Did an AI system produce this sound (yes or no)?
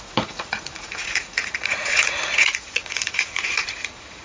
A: yes